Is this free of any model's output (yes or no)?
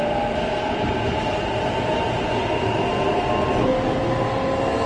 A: yes